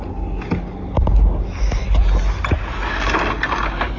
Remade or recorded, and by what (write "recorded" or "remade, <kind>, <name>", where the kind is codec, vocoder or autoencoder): recorded